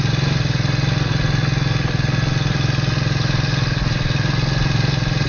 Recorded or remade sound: recorded